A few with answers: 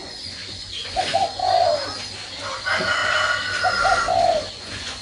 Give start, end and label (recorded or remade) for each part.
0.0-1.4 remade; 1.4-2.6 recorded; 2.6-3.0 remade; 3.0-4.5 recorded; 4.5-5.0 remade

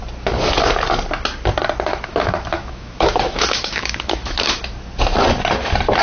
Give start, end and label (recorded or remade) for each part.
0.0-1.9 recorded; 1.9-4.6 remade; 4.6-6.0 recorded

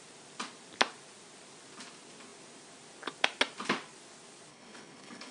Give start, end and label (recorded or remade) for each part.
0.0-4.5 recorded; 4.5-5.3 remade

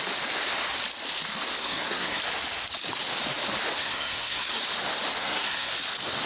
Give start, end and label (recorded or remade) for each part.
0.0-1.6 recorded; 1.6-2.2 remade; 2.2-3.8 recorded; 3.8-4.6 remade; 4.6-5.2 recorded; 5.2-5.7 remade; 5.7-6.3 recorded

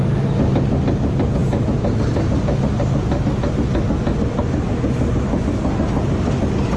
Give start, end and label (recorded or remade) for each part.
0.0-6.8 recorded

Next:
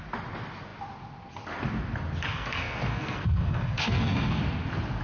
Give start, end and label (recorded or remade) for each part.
0.0-2.2 recorded; 2.2-4.4 remade; 4.4-5.0 recorded

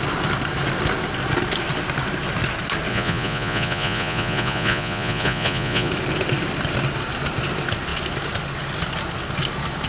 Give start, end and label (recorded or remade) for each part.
0.0-2.9 recorded; 2.9-5.9 remade; 5.9-9.9 recorded